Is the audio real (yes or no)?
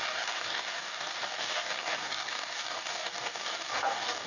no